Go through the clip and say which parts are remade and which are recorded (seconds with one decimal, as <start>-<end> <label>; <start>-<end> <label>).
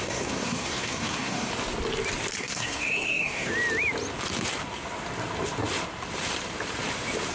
0.0-1.5 remade; 1.5-2.4 recorded; 2.4-3.5 remade; 3.5-7.3 recorded